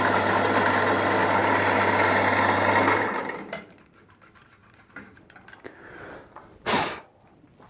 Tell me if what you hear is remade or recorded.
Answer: remade